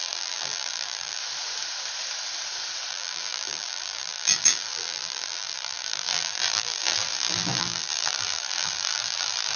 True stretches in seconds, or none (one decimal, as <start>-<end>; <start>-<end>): 1.2-2.9